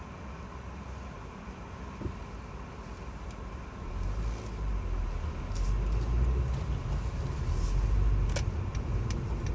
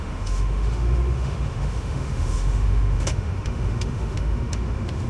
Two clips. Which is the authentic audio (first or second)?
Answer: first